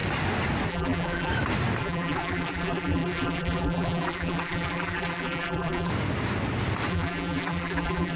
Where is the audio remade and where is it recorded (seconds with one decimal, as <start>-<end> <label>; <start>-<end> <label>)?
0.0-0.7 recorded; 0.7-1.3 remade; 1.3-1.8 recorded; 1.8-5.9 remade; 5.9-6.9 recorded; 6.9-8.2 remade